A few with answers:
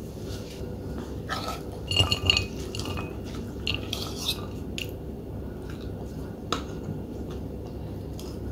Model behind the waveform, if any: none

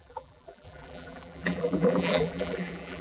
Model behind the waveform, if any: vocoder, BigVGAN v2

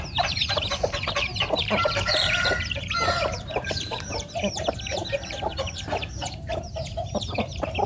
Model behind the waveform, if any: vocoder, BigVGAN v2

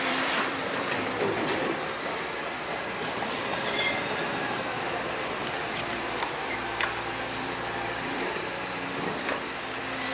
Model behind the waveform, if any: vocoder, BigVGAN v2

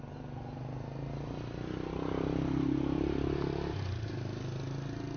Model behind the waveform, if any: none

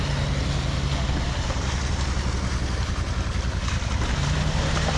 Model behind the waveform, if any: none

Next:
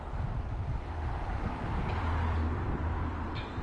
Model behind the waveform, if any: vocoder, BigVGAN v2